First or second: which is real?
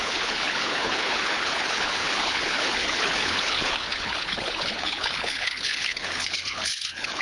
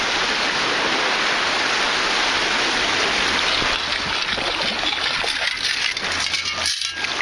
second